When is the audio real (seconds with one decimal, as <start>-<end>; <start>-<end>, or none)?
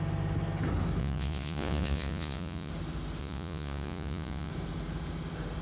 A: 0.0-1.0; 2.7-3.2; 4.5-5.6